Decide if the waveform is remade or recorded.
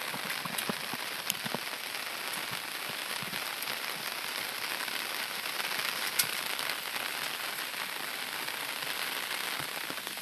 recorded